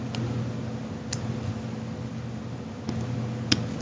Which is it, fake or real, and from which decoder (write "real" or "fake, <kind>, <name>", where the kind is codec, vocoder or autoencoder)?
real